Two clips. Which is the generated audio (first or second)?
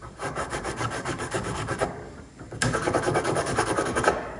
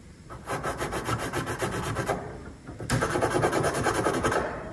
first